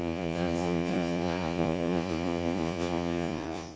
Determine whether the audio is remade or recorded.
remade